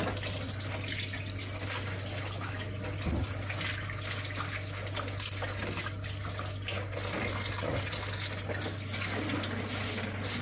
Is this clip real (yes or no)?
yes